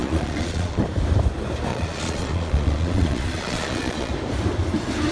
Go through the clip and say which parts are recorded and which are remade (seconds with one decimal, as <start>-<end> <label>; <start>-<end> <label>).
0.0-0.8 remade; 0.8-1.7 recorded; 1.7-4.1 remade; 4.1-5.1 recorded